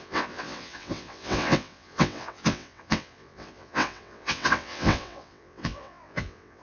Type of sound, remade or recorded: remade